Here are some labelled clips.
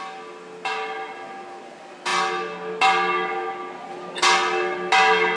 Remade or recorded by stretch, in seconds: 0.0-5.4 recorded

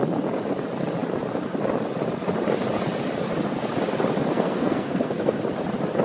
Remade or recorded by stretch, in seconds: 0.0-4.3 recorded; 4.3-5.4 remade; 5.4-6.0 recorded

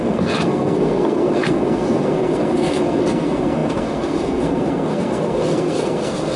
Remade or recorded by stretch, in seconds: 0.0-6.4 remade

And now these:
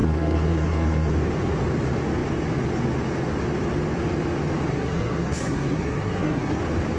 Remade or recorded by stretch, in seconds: 0.0-1.1 remade; 1.1-4.7 recorded; 4.7-6.6 remade; 6.6-7.0 recorded